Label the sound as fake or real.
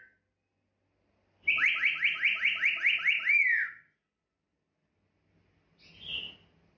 real